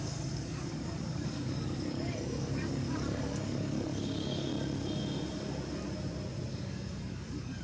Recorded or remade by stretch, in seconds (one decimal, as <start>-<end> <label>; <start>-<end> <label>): 0.0-4.5 remade; 4.5-6.5 recorded; 6.5-7.6 remade